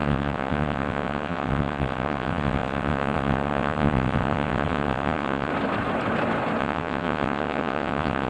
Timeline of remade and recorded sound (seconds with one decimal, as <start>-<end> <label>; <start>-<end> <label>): 0.0-5.5 remade; 5.5-6.6 recorded; 6.6-8.3 remade